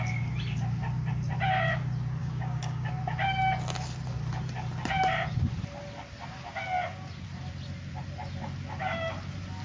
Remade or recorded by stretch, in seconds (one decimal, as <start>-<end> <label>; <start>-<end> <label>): 0.0-2.2 recorded; 2.2-2.9 remade; 2.9-9.6 recorded